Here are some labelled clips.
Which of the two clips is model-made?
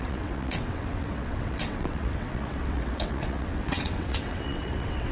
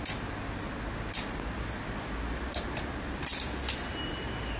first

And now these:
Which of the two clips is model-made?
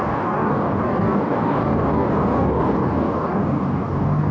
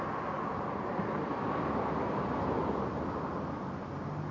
first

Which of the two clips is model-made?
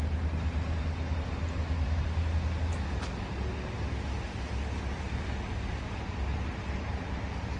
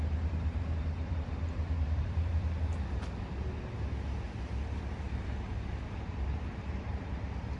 second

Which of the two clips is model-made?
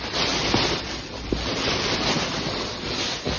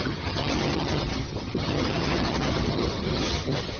second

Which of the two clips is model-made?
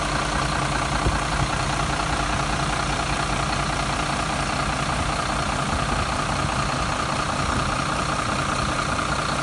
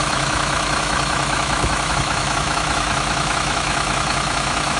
second